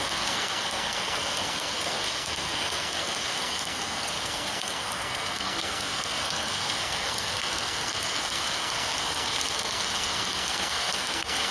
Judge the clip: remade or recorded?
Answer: remade